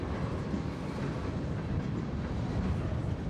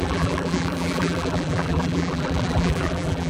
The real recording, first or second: first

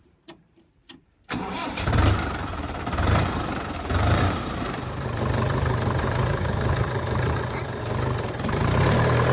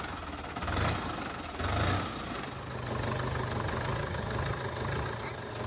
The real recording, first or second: second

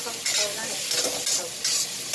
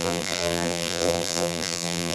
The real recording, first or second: first